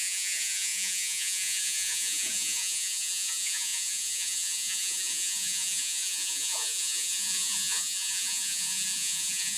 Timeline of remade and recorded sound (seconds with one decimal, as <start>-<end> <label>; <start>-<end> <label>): 0.0-9.6 remade